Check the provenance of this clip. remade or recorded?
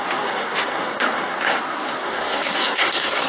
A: remade